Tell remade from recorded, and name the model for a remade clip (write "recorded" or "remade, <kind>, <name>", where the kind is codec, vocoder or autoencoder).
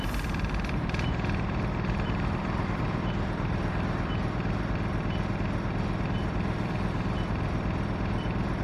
remade, vocoder, BigVGAN v2